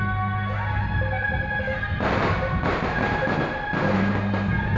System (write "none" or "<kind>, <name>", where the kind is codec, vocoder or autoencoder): none